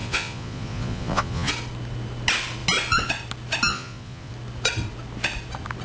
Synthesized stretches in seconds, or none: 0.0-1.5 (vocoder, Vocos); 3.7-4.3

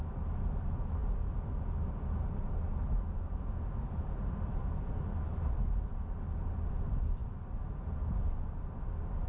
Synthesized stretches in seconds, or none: none